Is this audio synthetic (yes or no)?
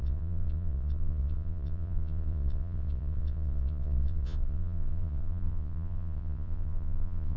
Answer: yes